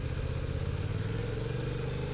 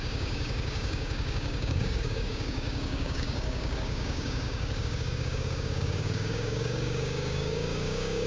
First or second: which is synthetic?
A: second